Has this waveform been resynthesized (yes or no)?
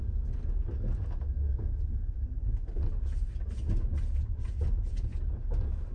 no